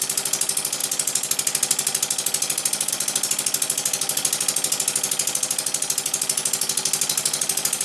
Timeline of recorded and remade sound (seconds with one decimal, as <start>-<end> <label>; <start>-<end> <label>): 0.0-7.8 recorded